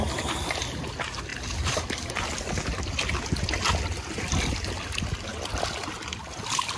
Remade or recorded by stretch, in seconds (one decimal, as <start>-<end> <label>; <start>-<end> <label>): 0.0-1.3 recorded; 1.3-2.1 remade; 2.1-6.8 recorded